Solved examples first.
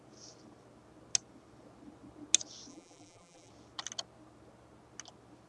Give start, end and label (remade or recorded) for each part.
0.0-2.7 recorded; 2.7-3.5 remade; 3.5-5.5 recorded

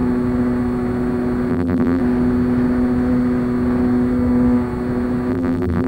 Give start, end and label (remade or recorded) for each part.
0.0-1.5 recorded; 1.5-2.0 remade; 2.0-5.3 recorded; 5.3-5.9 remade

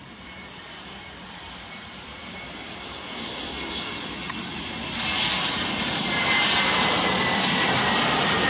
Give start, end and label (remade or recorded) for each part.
0.0-3.5 remade; 3.5-5.5 recorded; 5.5-8.5 remade